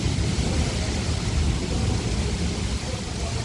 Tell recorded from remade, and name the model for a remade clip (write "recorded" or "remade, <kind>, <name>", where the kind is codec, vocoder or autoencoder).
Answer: recorded